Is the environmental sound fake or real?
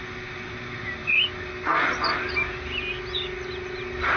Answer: real